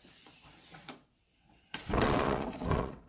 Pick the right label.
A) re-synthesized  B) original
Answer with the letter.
A